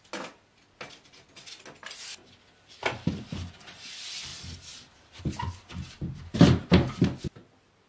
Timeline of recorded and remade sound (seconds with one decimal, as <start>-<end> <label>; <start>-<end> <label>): 0.0-7.9 recorded

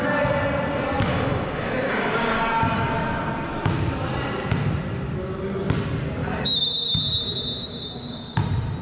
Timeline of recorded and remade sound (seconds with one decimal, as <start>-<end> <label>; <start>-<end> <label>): 0.0-1.1 recorded; 1.1-2.9 remade; 2.9-6.2 recorded; 6.2-7.0 remade; 7.0-7.6 recorded; 7.6-8.4 remade; 8.4-8.8 recorded

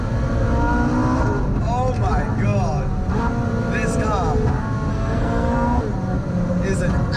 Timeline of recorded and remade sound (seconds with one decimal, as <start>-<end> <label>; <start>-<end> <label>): 0.0-4.9 recorded; 4.9-5.8 remade; 5.8-7.2 recorded